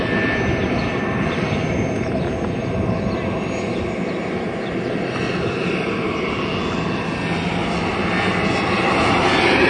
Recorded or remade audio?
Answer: recorded